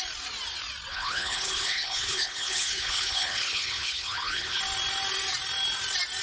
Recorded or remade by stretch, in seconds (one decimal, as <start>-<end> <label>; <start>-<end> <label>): 0.0-0.9 recorded; 0.9-4.6 remade; 4.6-6.2 recorded